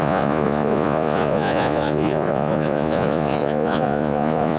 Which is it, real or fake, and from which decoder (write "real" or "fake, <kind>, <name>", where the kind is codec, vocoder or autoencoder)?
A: fake, vocoder, Vocos